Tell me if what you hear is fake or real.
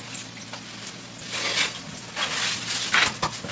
real